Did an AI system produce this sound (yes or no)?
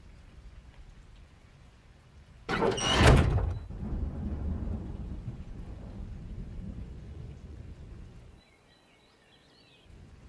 yes